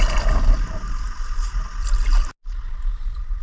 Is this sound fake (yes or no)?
no